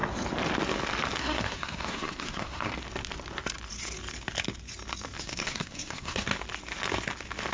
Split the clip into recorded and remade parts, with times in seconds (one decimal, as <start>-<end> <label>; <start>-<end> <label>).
0.0-1.2 recorded; 1.2-2.7 remade; 2.7-5.2 recorded; 5.2-6.3 remade; 6.3-7.5 recorded